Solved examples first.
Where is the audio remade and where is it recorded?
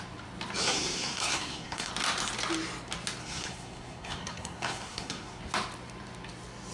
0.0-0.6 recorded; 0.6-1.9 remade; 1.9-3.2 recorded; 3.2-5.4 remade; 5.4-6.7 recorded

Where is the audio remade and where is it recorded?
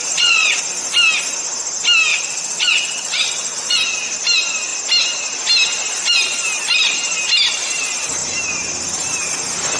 0.0-0.6 remade; 0.6-2.1 recorded; 2.1-3.7 remade; 3.7-9.8 recorded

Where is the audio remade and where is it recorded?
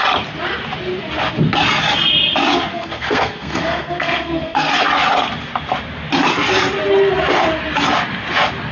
0.0-2.7 recorded; 2.7-4.7 remade; 4.7-8.7 recorded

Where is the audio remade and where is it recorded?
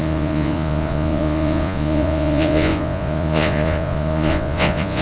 0.0-5.0 remade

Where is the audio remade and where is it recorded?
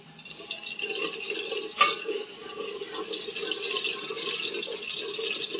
0.0-2.0 recorded; 2.0-2.6 remade; 2.6-5.6 recorded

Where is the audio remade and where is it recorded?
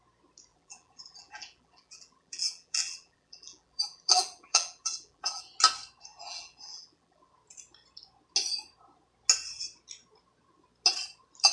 0.0-0.5 recorded; 0.5-5.4 remade; 5.4-6.1 recorded; 6.1-7.3 remade; 7.3-11.5 recorded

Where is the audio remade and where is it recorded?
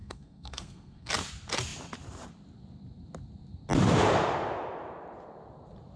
0.0-1.1 remade; 1.1-6.0 recorded